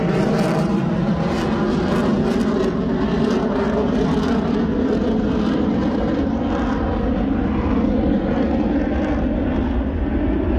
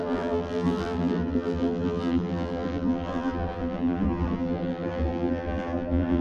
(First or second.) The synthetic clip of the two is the second